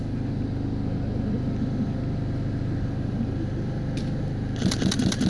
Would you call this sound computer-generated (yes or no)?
no